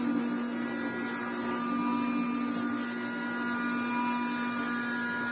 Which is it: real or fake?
real